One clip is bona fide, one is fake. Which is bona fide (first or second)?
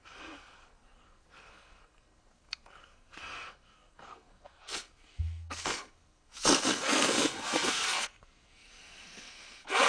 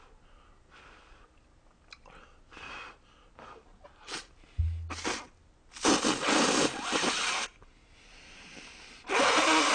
second